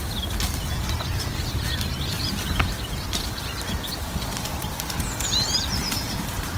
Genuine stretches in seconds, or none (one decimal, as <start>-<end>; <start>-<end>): 4.6-5.6